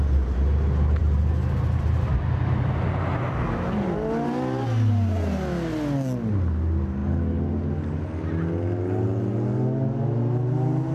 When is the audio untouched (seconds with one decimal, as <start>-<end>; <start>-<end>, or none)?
0.0-10.9

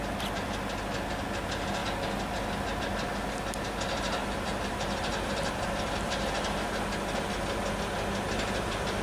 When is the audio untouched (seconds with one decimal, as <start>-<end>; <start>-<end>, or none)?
0.0-4.2; 6.6-9.0

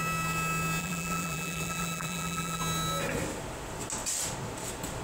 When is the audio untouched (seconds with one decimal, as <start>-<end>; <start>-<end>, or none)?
0.0-0.8; 2.6-5.0

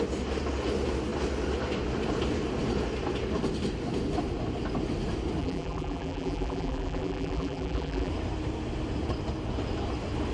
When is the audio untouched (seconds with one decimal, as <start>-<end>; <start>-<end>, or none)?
0.0-5.4; 8.1-10.3

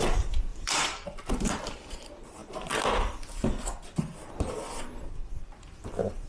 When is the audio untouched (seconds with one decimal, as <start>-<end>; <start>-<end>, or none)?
2.4-5.4

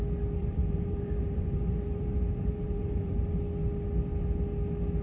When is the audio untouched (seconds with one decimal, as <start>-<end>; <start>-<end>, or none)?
0.0-0.4; 3.4-5.0